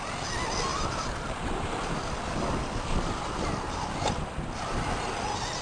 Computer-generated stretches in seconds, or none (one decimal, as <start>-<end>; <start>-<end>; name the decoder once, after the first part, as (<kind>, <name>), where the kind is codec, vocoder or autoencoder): 0.7-3.8 (vocoder, BigVGAN v2)